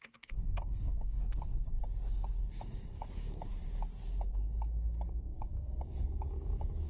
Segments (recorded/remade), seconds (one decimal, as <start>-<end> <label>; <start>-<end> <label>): 0.0-1.5 remade; 1.5-2.6 recorded; 2.6-3.4 remade; 3.4-4.2 recorded; 4.2-6.9 remade